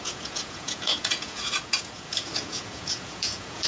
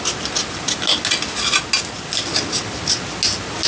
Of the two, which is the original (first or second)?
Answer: second